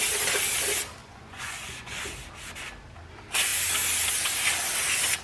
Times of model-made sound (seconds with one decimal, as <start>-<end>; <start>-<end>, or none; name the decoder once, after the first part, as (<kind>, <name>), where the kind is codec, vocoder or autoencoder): 1.0-2.0 (vocoder, Vocos)